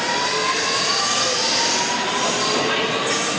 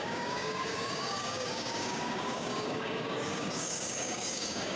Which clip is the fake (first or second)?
second